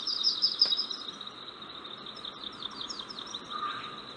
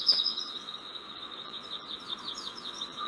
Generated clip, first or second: second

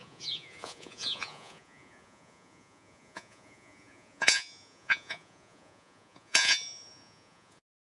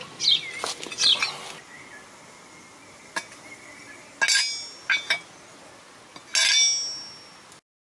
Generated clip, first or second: first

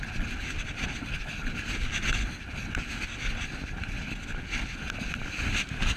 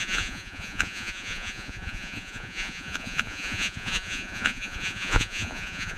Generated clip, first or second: second